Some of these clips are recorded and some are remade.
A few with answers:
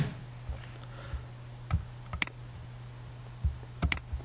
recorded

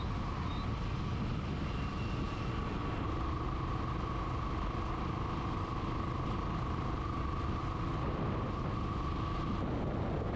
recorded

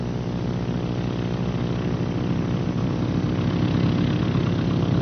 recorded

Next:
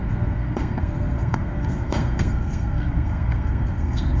remade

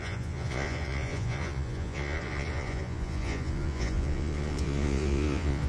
remade